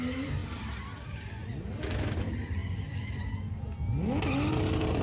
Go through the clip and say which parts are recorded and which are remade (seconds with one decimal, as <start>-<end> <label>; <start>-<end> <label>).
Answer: 0.0-2.6 recorded; 2.6-3.2 remade; 3.2-5.0 recorded